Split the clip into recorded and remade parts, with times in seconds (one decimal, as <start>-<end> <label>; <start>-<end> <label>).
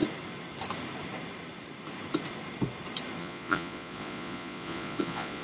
0.0-3.2 recorded; 3.2-5.4 remade